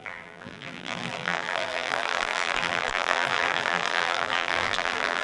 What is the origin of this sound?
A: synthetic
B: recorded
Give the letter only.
A